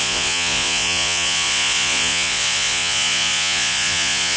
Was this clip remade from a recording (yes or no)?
yes